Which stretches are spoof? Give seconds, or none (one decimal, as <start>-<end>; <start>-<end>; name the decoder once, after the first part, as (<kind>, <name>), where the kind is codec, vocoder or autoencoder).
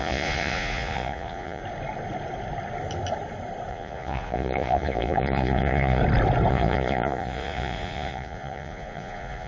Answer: 0.0-1.6 (vocoder, Vocos); 3.7-6.0; 6.5-9.5